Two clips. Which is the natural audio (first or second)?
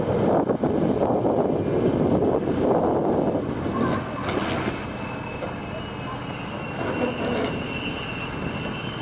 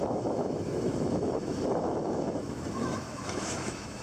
first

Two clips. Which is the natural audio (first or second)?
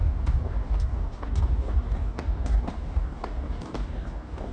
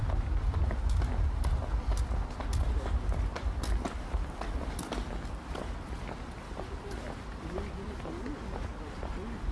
second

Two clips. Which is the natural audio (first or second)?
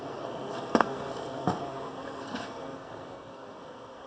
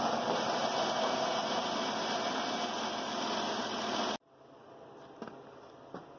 second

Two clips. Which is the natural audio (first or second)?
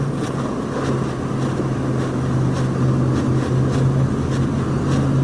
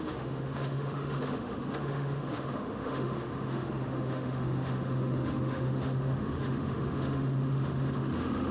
first